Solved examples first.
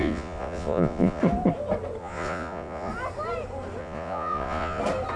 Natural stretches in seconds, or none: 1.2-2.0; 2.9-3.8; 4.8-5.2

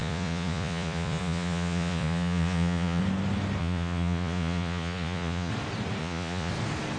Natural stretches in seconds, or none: 3.0-3.6; 5.5-6.0; 6.5-7.0

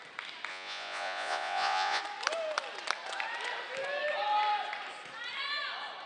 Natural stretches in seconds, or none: 0.0-0.5; 2.0-6.1

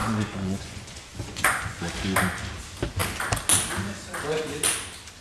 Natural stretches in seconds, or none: 1.8-5.2

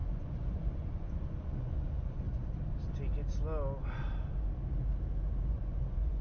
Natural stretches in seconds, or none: 2.4-5.5